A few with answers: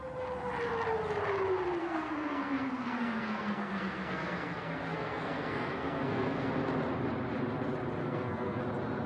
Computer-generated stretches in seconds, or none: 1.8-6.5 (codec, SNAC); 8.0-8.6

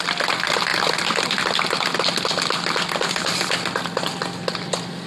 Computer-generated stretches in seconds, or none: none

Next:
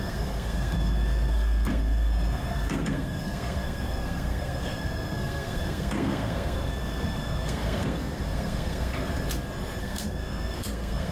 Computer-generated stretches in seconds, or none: 0.0-8.9 (codec, SNAC); 9.8-11.1